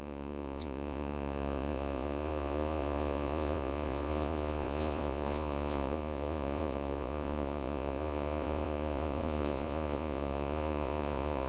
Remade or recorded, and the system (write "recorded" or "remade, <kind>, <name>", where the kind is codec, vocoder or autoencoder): remade, vocoder, Vocos